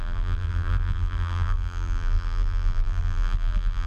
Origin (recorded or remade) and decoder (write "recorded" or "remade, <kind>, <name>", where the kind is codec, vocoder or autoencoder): remade, vocoder, BigVGAN v2